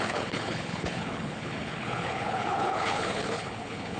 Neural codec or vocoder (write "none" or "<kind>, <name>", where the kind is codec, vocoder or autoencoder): codec, HILCodec